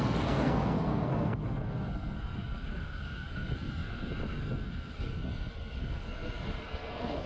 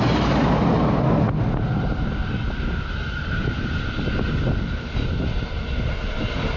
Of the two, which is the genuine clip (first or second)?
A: second